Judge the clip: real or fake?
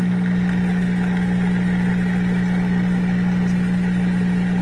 real